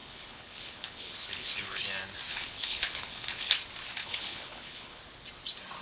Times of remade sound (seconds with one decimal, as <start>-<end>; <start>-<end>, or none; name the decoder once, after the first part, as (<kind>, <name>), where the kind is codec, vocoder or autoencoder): 0.0-1.8 (codec, HILCodec); 2.3-3.5; 4.0-5.0